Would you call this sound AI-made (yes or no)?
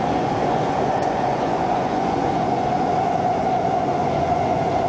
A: yes